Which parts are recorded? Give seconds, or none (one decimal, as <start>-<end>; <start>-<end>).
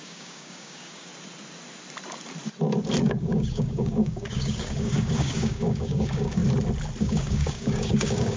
1.1-3.0; 6.4-7.0